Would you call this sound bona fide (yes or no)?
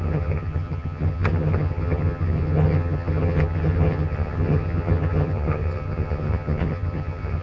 no